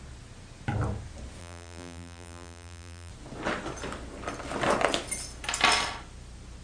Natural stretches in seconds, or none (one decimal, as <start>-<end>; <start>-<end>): 0.0-1.4; 3.1-6.6